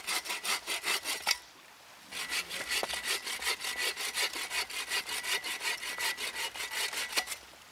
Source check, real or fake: real